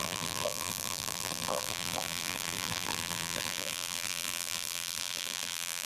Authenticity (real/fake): fake